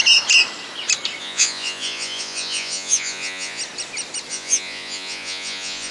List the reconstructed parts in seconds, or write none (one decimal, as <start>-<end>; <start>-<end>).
1.2-3.6; 4.3-5.9